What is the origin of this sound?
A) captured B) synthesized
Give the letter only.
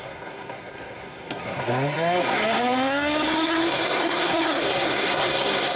B